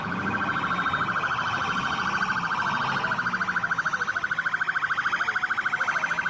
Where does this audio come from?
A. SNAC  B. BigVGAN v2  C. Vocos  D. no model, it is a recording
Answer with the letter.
D